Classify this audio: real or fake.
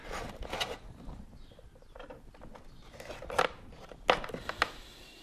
real